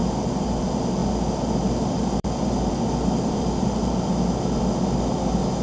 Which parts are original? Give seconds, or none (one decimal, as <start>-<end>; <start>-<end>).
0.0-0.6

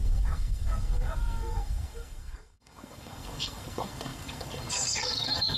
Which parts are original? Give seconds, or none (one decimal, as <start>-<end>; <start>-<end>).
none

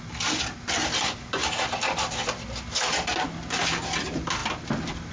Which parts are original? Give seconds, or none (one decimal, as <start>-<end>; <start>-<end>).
0.0-5.1